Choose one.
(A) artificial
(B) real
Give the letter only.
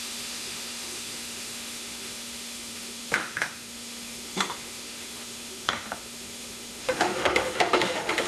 A